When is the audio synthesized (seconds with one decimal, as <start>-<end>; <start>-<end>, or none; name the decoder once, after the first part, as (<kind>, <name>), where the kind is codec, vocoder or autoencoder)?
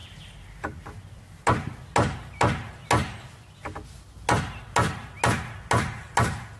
none